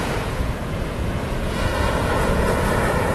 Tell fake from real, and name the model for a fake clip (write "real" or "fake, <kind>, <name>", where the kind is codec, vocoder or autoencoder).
fake, vocoder, Vocos